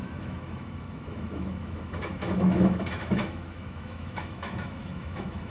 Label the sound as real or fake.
fake